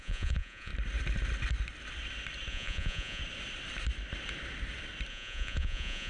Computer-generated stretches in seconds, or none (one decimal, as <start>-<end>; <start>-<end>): 0.0-0.7; 2.5-3.2; 5.1-6.1